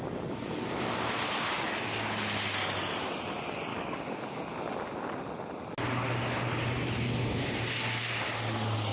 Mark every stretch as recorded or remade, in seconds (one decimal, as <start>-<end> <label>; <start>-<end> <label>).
0.0-3.7 recorded; 3.7-4.4 remade; 4.4-8.9 recorded